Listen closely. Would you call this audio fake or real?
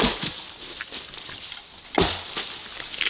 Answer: real